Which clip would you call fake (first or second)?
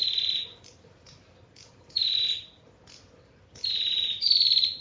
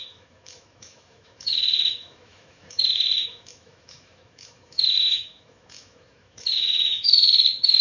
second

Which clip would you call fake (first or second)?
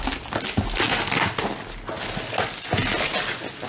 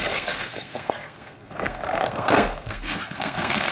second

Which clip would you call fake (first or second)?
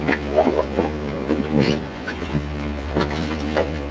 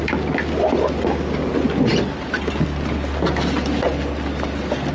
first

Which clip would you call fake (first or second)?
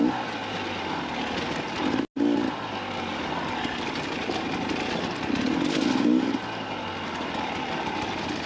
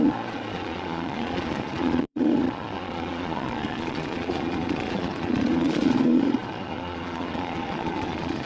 second